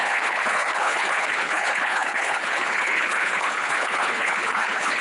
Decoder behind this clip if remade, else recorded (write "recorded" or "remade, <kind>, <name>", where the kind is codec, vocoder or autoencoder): remade, codec, HILCodec